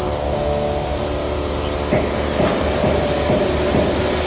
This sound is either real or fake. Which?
real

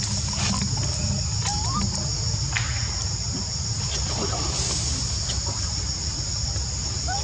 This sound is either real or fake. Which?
real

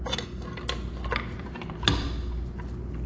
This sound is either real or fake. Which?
real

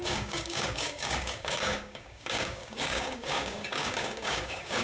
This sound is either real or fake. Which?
fake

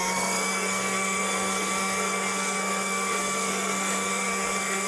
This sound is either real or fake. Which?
fake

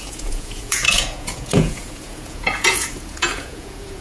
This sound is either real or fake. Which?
fake